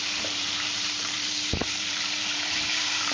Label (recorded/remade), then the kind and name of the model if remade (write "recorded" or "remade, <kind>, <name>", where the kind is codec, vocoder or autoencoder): remade, vocoder, BigVGAN v2